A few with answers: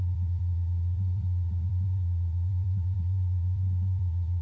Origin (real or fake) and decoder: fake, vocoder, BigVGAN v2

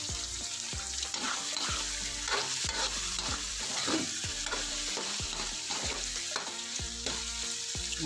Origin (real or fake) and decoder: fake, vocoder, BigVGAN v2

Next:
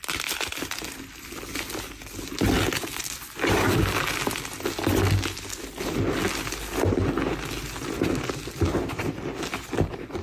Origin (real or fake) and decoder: real